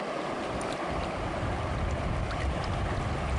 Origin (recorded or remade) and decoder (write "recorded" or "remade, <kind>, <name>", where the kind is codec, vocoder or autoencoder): remade, vocoder, BigVGAN v2